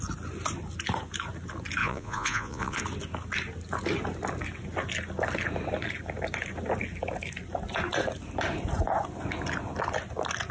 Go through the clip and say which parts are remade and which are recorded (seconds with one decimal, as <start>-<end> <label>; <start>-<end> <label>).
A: 0.0-1.8 recorded; 1.8-2.8 remade; 2.8-10.5 recorded